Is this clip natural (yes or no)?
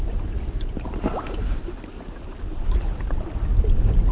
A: yes